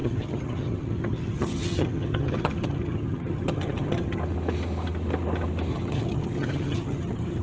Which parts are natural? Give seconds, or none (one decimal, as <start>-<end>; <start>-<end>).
4.2-5.7

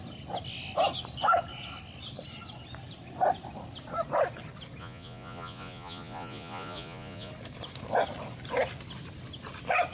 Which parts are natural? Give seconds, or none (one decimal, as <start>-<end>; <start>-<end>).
0.0-4.8; 7.3-9.9

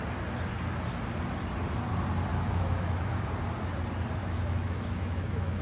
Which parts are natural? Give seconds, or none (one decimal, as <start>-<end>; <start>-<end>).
0.0-2.3; 3.2-4.2

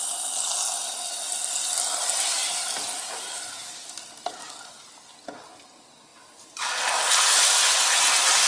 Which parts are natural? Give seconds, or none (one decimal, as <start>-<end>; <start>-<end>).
0.0-8.5